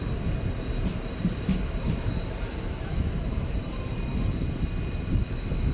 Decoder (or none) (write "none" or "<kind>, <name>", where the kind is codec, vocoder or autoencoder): none